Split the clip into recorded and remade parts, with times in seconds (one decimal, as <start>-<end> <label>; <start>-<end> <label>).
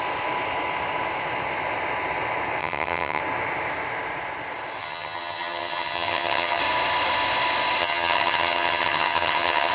0.0-2.6 recorded; 2.6-3.2 remade; 3.2-4.8 recorded; 4.8-6.6 remade; 6.6-7.8 recorded; 7.8-9.7 remade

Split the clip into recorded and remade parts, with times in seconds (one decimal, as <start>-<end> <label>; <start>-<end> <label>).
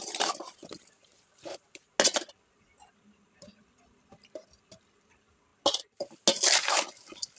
0.0-7.4 recorded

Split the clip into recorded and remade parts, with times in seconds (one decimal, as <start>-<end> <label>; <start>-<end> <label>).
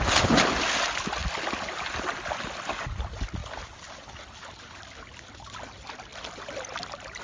0.0-7.2 recorded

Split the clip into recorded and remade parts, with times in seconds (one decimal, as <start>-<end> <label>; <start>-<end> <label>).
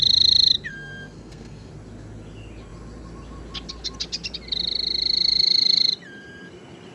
0.0-0.7 recorded; 0.7-1.7 remade; 1.7-6.9 recorded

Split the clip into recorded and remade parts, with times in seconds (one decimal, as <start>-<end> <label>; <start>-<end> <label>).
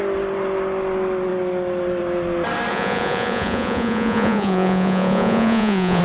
0.0-2.7 recorded; 2.7-6.0 remade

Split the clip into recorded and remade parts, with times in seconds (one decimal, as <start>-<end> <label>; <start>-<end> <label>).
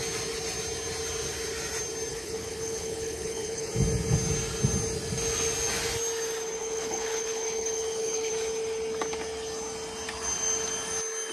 0.0-2.1 recorded; 2.1-3.7 remade; 3.7-6.6 recorded; 6.6-8.3 remade; 8.3-11.3 recorded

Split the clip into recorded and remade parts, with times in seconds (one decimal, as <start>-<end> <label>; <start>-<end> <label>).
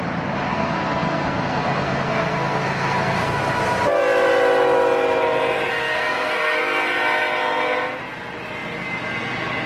0.0-0.5 recorded; 0.5-3.4 remade; 3.4-5.7 recorded; 5.7-6.6 remade; 6.6-9.7 recorded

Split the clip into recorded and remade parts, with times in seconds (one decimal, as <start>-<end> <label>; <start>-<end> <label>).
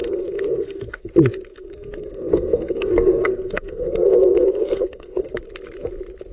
0.0-1.1 remade; 1.1-1.5 recorded; 1.5-5.3 remade; 5.3-6.3 recorded